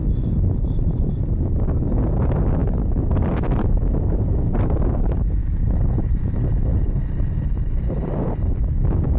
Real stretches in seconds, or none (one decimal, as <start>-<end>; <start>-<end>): 1.6-2.6; 6.2-6.7; 8.1-9.2